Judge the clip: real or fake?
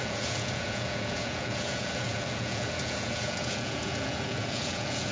fake